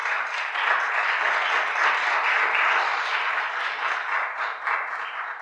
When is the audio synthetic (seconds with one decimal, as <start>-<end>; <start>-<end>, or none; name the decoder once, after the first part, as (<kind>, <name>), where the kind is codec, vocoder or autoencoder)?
none